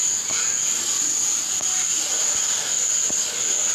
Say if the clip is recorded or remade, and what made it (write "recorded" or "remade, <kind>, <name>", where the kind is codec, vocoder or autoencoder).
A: recorded